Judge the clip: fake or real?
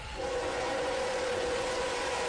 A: fake